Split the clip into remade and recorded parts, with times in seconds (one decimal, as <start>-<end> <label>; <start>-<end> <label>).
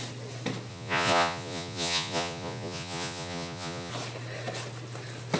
0.0-0.7 recorded; 0.7-3.9 remade; 3.9-5.4 recorded